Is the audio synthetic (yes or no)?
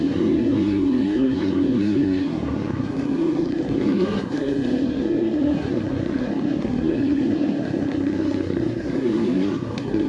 yes